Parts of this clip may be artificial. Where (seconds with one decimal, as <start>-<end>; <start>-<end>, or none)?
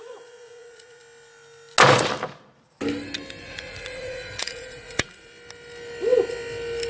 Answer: 0.0-1.0; 3.4-5.3